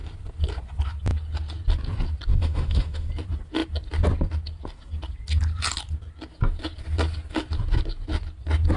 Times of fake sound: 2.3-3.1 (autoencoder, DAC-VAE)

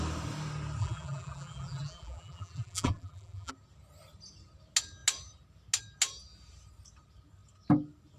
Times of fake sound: 0.8-3.5 (vocoder, BigVGAN v2)

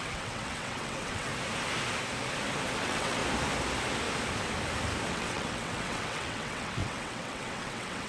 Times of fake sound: 0.0-1.3 (vocoder, WaveNeXt); 2.8-3.2; 5.1-8.1

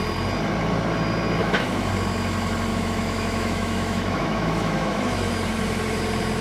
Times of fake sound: 1.4-1.9 (autoencoder, DAC-VAE); 2.7-5.3

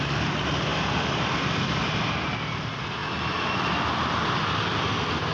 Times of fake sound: 0.7-1.6 (vocoder, BigVGAN v2)